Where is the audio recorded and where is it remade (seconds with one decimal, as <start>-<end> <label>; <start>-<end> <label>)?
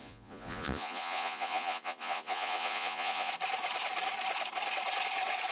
0.0-3.3 remade; 3.3-5.5 recorded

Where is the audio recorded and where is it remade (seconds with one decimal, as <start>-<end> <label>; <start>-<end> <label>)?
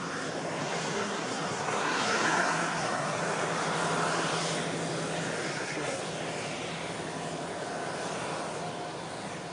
0.0-0.6 recorded; 0.6-3.2 remade; 3.2-5.5 recorded; 5.5-6.0 remade; 6.0-9.5 recorded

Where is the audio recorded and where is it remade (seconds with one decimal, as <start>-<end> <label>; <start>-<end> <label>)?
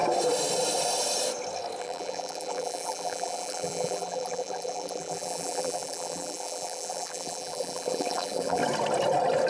0.0-1.8 recorded; 1.8-8.6 remade; 8.6-9.5 recorded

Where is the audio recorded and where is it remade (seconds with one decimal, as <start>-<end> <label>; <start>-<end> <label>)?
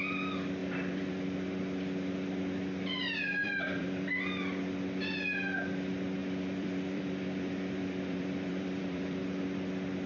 0.0-0.6 recorded; 0.6-1.1 remade; 1.1-3.4 recorded; 3.4-4.1 remade; 4.1-6.2 recorded; 6.2-9.2 remade; 9.2-10.1 recorded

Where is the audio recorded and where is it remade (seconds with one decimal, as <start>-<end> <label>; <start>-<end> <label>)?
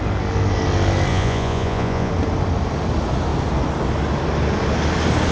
0.0-1.1 recorded; 1.1-2.1 remade; 2.1-5.3 recorded